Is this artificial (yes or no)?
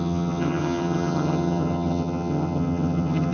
yes